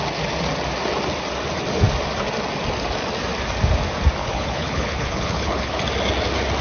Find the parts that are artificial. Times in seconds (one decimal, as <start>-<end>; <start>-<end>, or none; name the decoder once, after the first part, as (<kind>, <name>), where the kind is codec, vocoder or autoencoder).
4.2-5.8 (codec, HILCodec)